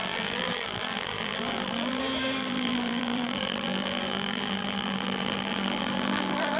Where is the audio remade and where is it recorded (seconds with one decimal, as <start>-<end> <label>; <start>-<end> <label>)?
0.0-2.0 remade; 2.0-2.4 recorded; 2.4-6.6 remade